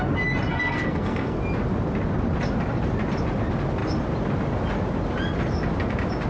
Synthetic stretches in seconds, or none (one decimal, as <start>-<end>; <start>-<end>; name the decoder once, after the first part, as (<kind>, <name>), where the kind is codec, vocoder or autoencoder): 0.5-1.4 (codec, SNAC)